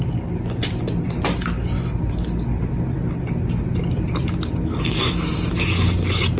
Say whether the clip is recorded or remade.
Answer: recorded